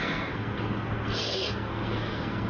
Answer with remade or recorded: remade